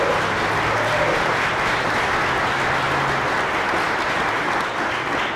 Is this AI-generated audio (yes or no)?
no